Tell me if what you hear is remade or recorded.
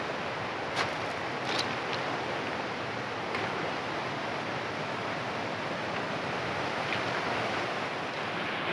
recorded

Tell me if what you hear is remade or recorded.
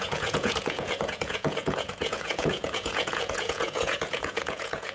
remade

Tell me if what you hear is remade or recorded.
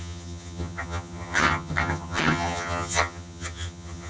remade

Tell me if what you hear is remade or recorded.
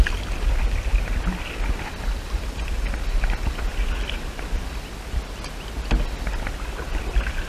recorded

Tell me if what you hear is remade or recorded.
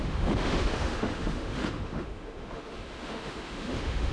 remade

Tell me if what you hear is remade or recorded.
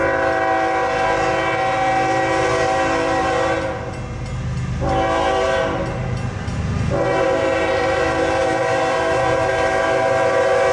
recorded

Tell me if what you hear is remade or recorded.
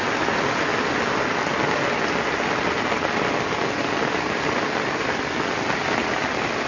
recorded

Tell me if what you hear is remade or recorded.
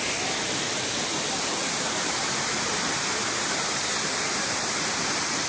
remade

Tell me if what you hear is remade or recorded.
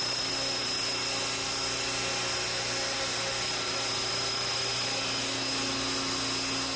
recorded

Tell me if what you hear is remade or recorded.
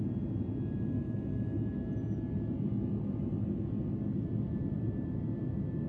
recorded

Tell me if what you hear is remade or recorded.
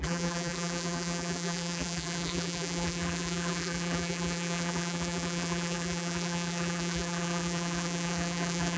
remade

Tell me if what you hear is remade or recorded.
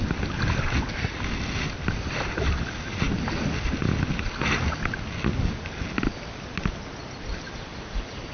recorded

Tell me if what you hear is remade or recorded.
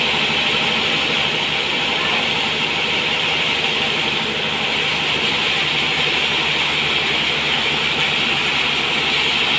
recorded